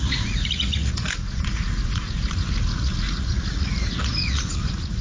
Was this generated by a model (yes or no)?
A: yes